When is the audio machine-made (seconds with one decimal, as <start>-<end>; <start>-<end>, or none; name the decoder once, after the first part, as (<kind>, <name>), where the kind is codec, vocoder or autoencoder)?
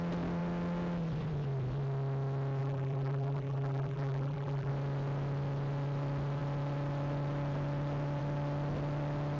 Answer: 2.6-4.7 (vocoder, BigVGAN v2)